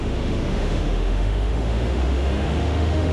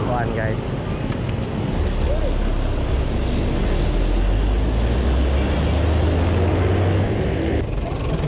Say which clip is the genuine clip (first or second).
second